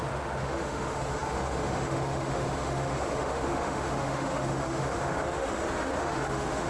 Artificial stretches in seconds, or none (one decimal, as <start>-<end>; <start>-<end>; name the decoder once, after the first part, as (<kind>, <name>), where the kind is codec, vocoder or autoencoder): 0.0-6.7 (autoencoder, DAC-VAE)